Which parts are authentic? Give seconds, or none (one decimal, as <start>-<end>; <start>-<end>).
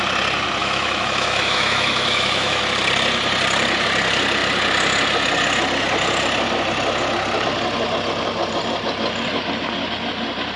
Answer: 0.0-0.6; 2.6-10.6